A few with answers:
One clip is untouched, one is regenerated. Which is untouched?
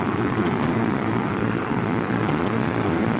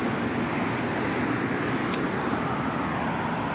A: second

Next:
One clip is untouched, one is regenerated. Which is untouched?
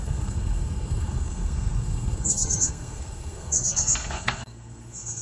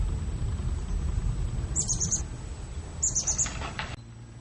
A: second